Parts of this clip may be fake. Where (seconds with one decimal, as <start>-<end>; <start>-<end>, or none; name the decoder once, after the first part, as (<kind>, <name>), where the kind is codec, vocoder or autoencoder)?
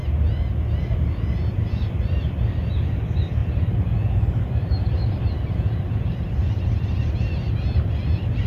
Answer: 1.5-8.5 (vocoder, BigVGAN v2)